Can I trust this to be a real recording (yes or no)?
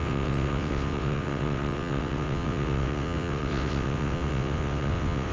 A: no